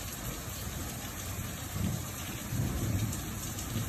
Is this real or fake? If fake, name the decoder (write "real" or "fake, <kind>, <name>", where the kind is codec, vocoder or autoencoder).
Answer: fake, vocoder, BigVGAN v2